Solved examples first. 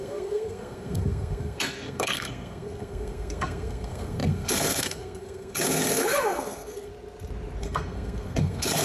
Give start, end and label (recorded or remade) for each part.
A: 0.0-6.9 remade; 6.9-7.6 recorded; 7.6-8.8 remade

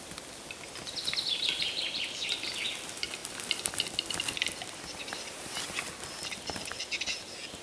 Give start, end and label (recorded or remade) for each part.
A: 0.0-7.6 recorded

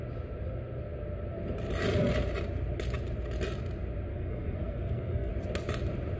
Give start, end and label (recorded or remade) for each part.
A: 0.0-4.1 recorded; 4.1-5.3 remade; 5.3-6.2 recorded

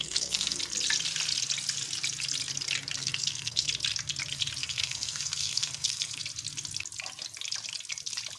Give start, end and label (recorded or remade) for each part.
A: 0.0-0.6 remade; 0.6-3.0 recorded; 3.0-3.7 remade; 3.7-4.6 recorded; 4.6-6.2 remade; 6.2-8.4 recorded

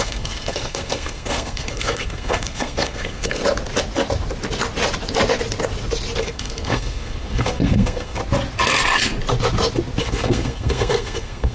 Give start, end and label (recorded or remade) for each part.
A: 0.0-3.4 remade; 3.4-6.2 recorded; 6.2-8.2 remade; 8.2-10.0 recorded; 10.0-11.5 remade

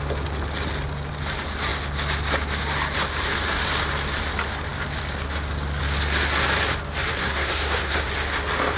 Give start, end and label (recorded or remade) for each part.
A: 0.0-7.2 recorded; 7.2-8.1 remade; 8.1-8.8 recorded